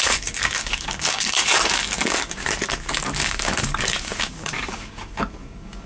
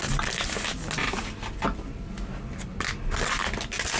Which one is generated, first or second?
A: first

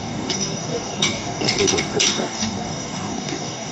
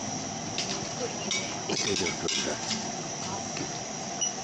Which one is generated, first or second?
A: first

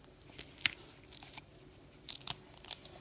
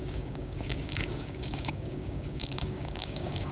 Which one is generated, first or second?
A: second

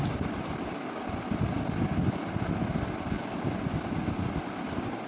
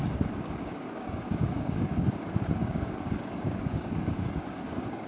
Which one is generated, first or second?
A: second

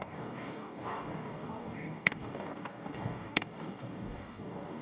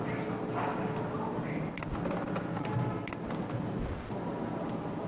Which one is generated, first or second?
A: first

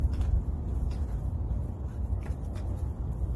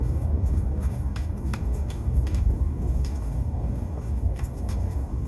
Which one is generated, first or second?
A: second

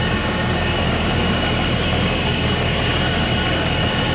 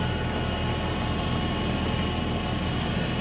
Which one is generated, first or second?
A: first